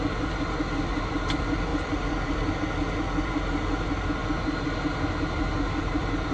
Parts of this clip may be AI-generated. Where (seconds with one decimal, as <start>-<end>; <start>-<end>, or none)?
0.0-4.2; 5.8-6.3